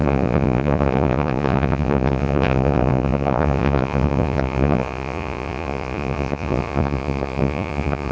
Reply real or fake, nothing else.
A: fake